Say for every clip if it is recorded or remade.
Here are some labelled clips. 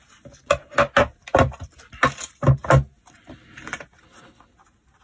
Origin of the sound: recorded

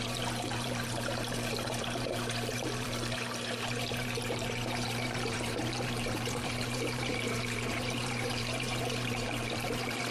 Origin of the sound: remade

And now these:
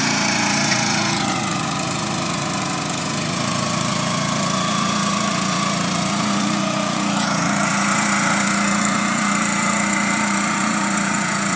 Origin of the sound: remade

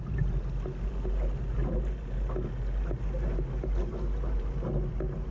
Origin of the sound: recorded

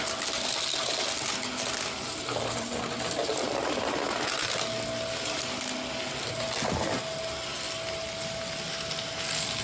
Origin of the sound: recorded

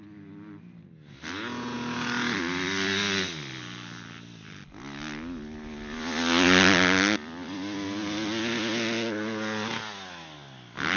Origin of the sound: recorded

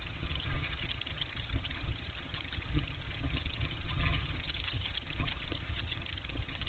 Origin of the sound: remade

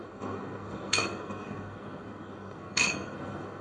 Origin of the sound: remade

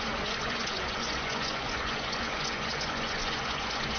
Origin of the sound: remade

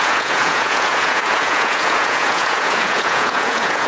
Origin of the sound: remade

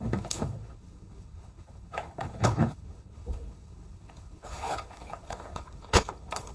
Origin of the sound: remade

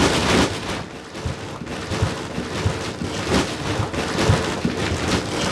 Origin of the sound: recorded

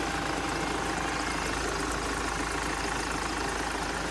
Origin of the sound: recorded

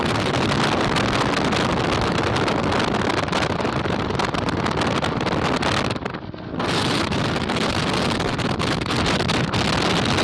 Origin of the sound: recorded